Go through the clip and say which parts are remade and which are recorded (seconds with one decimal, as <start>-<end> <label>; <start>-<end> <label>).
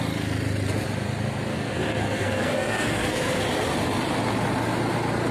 0.0-1.5 recorded; 1.5-3.4 remade; 3.4-5.3 recorded